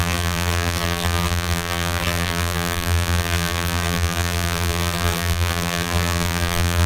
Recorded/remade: remade